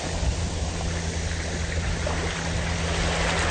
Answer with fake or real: real